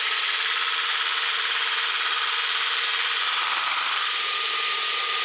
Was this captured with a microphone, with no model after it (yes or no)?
no